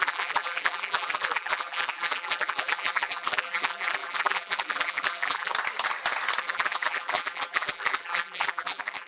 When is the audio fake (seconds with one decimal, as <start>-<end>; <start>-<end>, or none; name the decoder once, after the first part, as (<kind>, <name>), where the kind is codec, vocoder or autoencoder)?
0.0-5.5 (vocoder, BigVGAN v2); 6.4-9.1